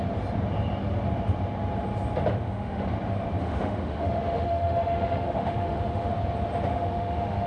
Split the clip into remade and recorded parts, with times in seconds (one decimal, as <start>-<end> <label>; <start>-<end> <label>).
0.0-2.3 recorded; 2.3-2.8 remade; 2.8-3.4 recorded; 3.4-6.1 remade; 6.1-6.7 recorded; 6.7-7.5 remade